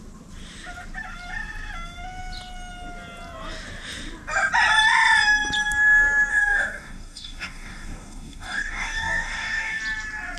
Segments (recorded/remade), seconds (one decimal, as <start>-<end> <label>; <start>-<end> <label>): 0.0-6.3 recorded; 6.3-9.8 remade; 9.8-10.4 recorded